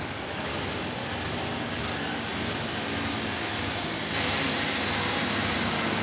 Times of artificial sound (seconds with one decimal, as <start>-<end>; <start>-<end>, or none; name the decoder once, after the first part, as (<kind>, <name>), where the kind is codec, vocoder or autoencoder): 0.0-0.5 (codec, DAC); 1.8-2.3; 5.5-6.0